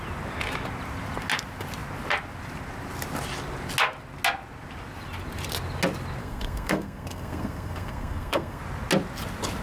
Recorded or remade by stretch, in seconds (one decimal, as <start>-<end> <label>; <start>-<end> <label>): 0.0-6.2 recorded; 6.2-8.6 remade; 8.6-9.6 recorded